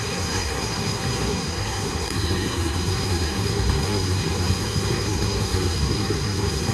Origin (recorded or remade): remade